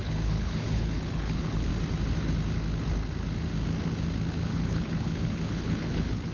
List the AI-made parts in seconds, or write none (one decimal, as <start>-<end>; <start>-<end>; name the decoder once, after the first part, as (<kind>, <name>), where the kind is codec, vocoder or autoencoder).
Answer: 0.0-1.7 (codec, HILCodec); 4.3-6.3